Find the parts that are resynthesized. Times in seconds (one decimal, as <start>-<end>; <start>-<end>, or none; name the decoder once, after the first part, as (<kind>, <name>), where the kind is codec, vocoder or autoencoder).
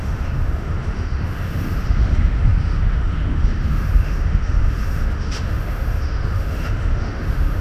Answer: 0.0-7.6 (autoencoder, DAC-VAE)